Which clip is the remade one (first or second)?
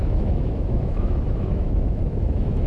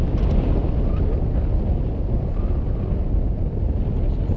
first